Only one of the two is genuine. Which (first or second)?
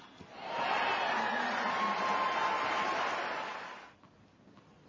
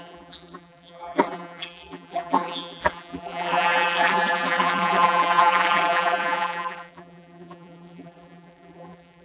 first